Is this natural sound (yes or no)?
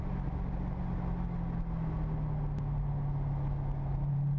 yes